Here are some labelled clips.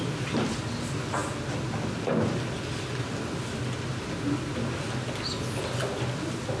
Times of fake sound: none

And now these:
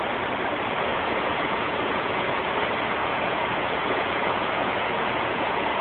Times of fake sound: 0.9-2.5; 3.0-5.8

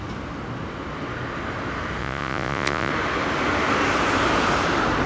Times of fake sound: 2.0-2.9

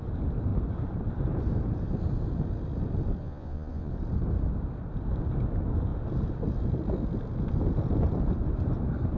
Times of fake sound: 3.2-3.9